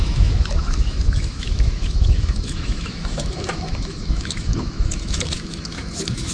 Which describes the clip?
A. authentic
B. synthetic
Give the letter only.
B